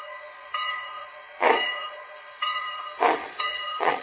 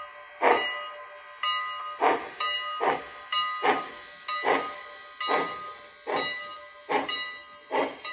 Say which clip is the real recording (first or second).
second